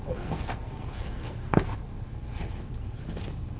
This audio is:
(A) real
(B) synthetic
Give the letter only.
B